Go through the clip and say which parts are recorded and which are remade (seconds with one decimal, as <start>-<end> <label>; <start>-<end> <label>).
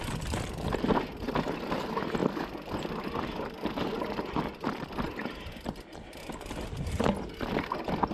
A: 0.0-8.1 recorded